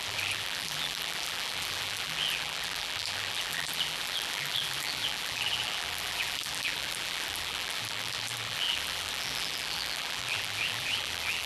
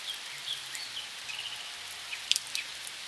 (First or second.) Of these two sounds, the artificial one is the first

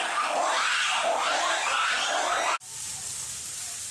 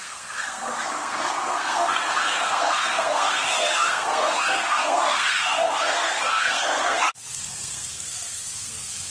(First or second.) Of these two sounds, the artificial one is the second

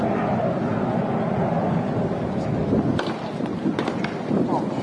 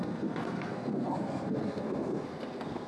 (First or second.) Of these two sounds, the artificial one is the second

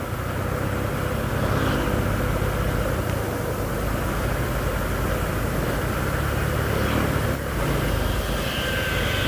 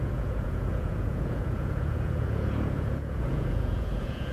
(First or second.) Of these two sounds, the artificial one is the second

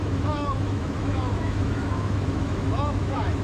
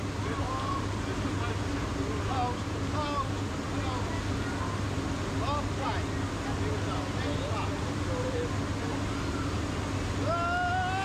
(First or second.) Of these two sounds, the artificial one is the first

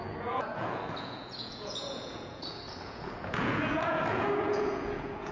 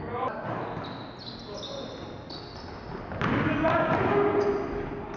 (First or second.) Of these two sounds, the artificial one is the first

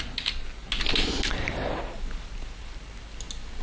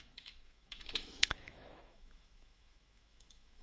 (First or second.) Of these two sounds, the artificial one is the second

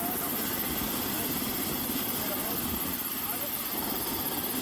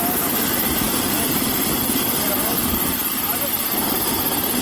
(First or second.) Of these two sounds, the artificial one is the first